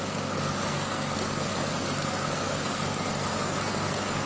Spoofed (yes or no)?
yes